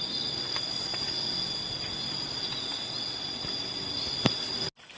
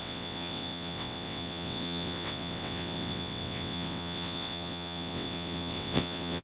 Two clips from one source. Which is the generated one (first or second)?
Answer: second